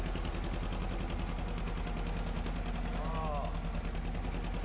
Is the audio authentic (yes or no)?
yes